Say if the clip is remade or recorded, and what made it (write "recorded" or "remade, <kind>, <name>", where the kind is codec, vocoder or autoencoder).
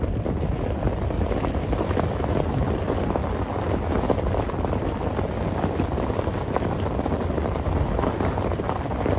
recorded